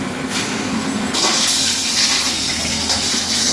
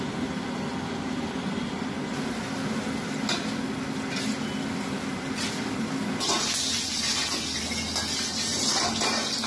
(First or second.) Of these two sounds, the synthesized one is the first